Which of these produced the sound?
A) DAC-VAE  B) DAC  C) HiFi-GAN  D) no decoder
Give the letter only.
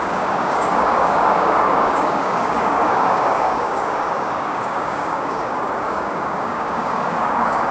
B